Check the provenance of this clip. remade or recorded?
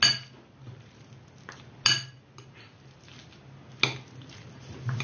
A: recorded